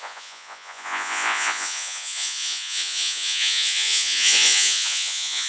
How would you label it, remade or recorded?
remade